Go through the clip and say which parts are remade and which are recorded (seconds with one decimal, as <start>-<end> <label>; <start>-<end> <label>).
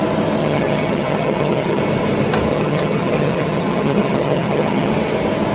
0.0-0.4 recorded; 0.4-1.8 remade; 1.8-2.5 recorded; 2.5-4.9 remade; 4.9-5.5 recorded